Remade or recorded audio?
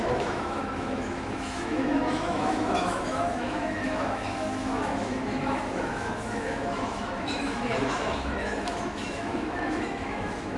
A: remade